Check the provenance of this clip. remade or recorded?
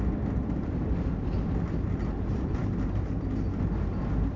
recorded